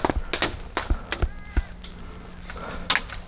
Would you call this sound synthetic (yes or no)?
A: no